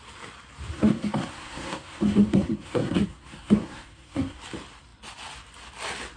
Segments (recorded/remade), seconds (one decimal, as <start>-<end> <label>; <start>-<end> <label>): 0.0-0.7 recorded; 0.7-4.4 remade; 4.4-6.2 recorded